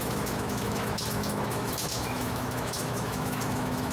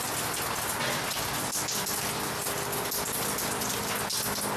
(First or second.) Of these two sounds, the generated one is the first